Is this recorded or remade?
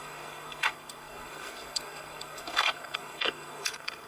remade